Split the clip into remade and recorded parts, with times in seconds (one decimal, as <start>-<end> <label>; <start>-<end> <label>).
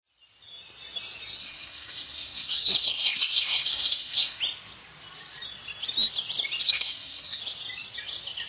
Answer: 0.0-1.4 recorded; 1.4-4.4 remade; 4.4-6.6 recorded; 6.6-7.4 remade; 7.4-8.5 recorded